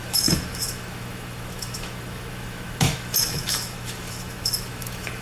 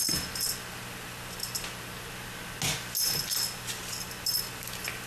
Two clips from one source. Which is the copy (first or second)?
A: first